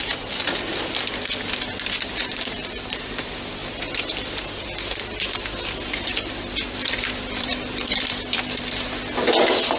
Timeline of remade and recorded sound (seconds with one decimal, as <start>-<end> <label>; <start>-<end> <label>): 0.0-3.6 recorded; 3.6-8.6 remade; 8.6-9.8 recorded